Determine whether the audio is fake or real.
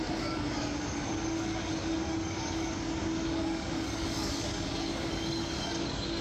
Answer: fake